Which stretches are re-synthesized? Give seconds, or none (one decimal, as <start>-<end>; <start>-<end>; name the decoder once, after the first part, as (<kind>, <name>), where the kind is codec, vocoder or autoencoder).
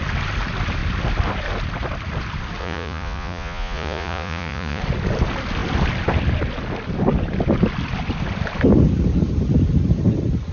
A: 2.6-4.8 (vocoder, Vocos)